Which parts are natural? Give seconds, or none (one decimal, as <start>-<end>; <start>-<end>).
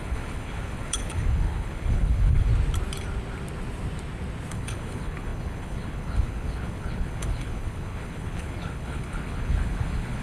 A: 2.5-4.5